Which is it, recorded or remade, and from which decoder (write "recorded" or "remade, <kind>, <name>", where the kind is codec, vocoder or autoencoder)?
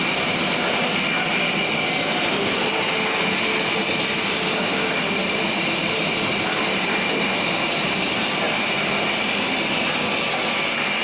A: recorded